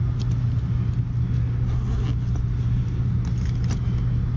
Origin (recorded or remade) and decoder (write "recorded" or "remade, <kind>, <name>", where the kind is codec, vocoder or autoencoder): recorded